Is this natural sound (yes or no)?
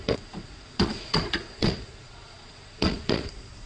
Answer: no